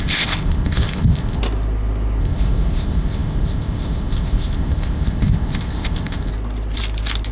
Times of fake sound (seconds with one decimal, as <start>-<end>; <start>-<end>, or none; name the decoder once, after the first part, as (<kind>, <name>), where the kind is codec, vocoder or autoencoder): 0.0-1.4 (codec, ZipCodec); 2.2-6.3